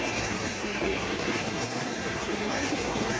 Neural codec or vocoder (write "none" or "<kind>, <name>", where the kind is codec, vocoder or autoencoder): codec, SNAC